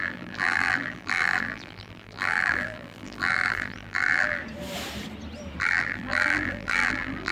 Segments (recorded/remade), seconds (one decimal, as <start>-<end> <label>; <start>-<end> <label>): 0.0-4.4 remade; 4.4-5.6 recorded; 5.6-7.3 remade